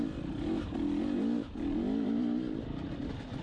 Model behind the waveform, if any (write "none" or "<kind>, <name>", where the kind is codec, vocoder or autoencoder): none